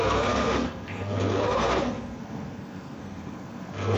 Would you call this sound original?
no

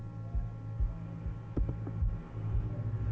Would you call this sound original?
yes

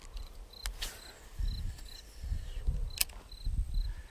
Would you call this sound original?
yes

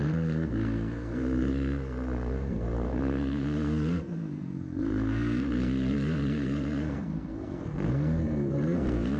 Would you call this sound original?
no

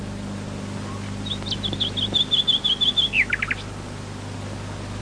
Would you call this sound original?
yes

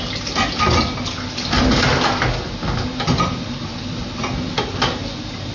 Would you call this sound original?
yes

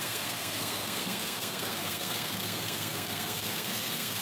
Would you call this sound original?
no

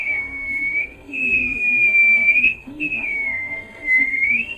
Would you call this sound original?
no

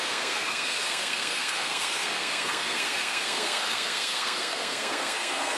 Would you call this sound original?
no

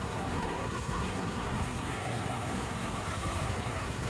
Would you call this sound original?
no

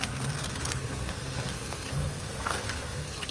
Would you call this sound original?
no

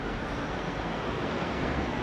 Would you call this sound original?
no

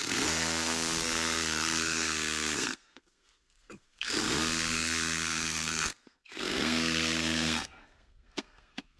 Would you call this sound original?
no